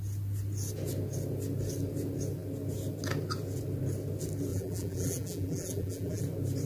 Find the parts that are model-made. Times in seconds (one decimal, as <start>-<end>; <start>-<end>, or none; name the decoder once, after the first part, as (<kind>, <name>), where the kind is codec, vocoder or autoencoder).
4.5-6.2 (vocoder, BigVGAN v2)